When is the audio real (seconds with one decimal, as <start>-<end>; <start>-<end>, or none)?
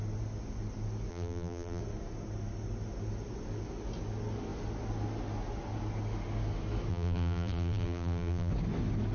0.0-1.1; 1.8-6.9; 8.5-9.1